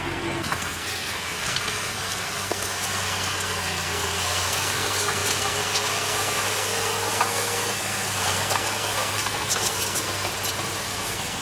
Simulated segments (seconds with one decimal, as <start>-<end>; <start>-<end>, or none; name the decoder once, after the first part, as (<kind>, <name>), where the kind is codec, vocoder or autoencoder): 0.0-10.3 (codec, SNAC); 10.8-11.4